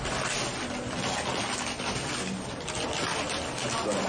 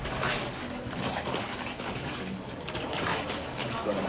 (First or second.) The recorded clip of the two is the first